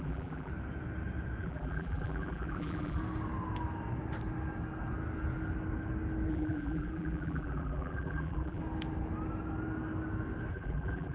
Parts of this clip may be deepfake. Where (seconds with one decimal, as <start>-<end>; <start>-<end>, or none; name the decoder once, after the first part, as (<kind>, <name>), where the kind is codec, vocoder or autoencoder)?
0.0-0.5 (vocoder, BigVGAN v2); 1.4-3.0; 6.3-8.6; 10.5-11.1